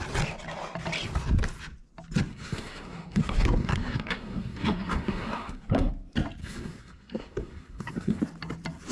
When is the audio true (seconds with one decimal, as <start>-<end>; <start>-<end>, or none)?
0.0-2.3; 5.9-6.4; 8.2-8.9